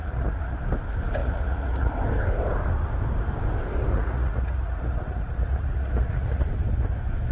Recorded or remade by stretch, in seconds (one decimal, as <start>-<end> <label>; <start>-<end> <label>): 0.0-0.6 remade; 0.6-1.2 recorded; 1.2-1.9 remade; 1.9-3.9 recorded; 3.9-6.5 remade; 6.5-7.3 recorded